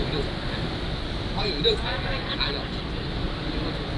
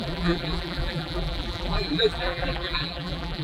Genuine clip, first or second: first